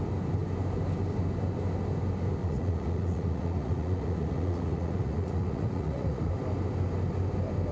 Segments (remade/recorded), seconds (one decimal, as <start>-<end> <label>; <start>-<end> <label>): 0.0-2.4 recorded; 2.4-6.3 remade; 6.3-7.7 recorded